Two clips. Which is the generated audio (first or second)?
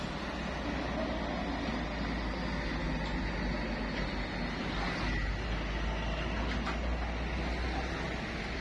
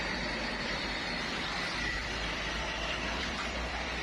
second